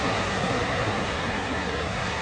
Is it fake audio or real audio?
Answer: fake